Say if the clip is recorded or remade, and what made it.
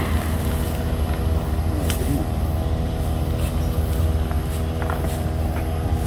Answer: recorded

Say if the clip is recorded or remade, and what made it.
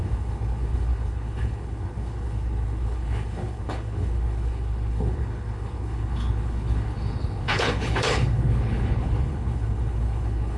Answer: remade, codec, HILCodec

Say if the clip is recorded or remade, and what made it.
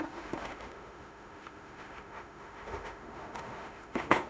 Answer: remade, autoencoder, DAC-VAE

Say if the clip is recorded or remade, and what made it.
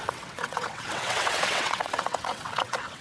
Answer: remade, vocoder, WaveNeXt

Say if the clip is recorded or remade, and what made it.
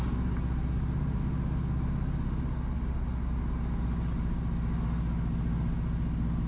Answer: recorded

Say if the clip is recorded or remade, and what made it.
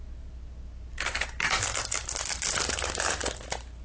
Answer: recorded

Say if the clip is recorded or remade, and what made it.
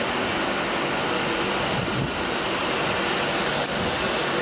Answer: recorded